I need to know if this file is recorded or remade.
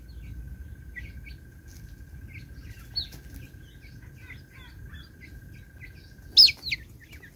recorded